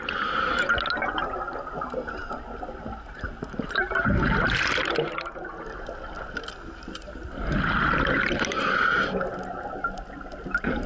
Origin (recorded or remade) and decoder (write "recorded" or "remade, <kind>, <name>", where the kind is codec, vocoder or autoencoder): recorded